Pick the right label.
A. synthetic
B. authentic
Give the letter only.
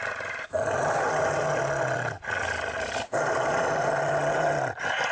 B